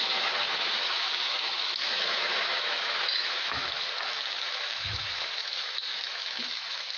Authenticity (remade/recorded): remade